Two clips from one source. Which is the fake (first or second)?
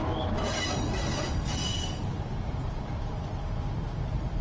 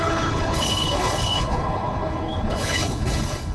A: second